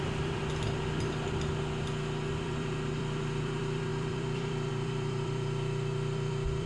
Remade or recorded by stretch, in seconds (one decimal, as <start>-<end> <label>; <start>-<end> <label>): 0.0-0.4 remade; 0.4-2.3 recorded; 2.3-6.7 remade